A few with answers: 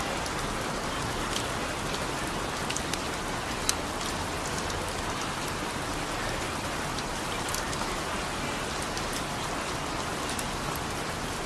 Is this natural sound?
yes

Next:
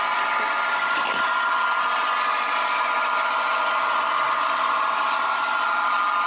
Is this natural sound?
yes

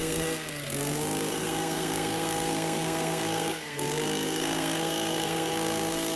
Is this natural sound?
no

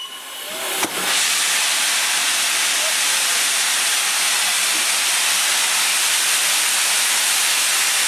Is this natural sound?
yes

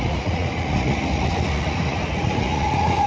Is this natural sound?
no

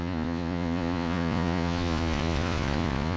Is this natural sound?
no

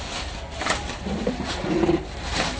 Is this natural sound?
yes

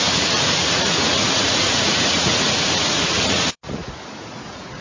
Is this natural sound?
no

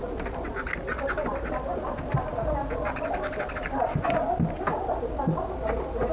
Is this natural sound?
yes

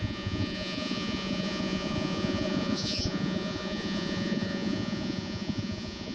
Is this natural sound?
no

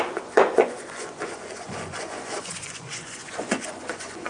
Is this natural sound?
no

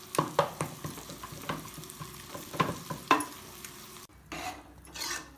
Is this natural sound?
yes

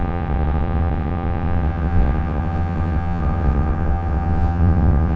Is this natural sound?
no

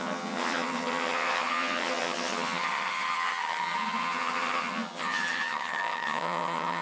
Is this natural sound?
no